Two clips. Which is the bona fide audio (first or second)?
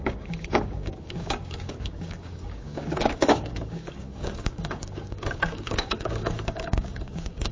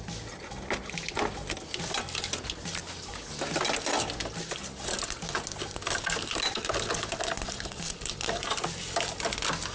second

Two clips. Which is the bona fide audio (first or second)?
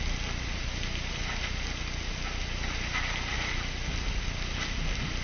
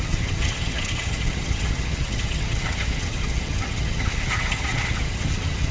first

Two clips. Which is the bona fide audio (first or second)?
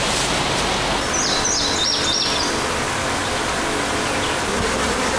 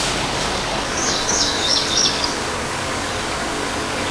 first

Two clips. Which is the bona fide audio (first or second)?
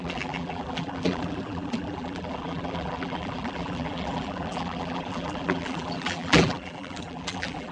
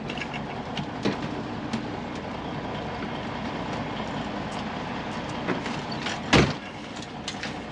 second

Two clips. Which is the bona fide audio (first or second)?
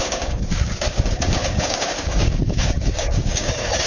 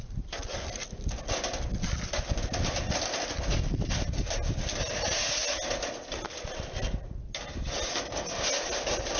second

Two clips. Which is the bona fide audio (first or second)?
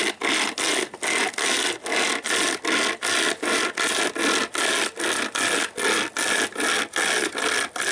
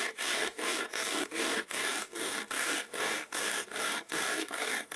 first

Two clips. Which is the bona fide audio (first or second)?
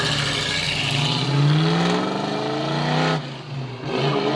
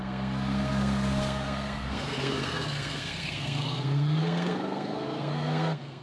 first